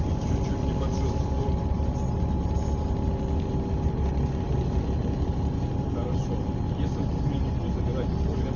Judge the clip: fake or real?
real